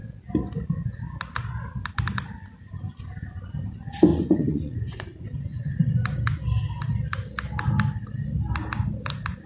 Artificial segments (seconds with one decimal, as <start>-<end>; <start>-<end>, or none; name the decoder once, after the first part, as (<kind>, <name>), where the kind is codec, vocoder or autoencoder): 4.1-5.7 (vocoder, Vocos)